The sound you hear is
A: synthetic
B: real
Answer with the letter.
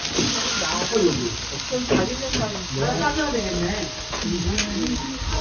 B